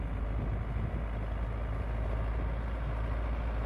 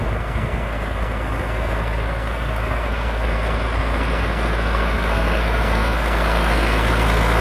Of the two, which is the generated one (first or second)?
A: second